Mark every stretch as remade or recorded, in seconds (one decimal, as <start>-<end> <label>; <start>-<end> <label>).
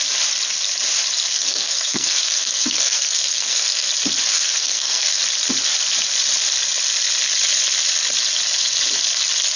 0.0-1.3 recorded; 1.3-3.9 remade; 3.9-4.3 recorded; 4.3-5.2 remade; 5.2-9.6 recorded